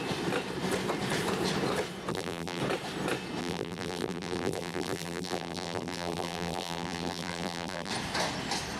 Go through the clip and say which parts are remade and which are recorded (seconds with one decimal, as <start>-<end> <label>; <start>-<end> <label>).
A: 0.0-2.1 recorded; 2.1-2.6 remade; 2.6-3.4 recorded; 3.4-7.9 remade; 7.9-8.8 recorded